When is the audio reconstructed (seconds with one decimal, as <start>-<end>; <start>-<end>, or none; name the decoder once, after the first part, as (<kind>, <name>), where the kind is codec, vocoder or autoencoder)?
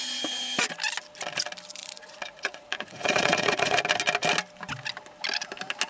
1.8-3.8 (vocoder, Vocos)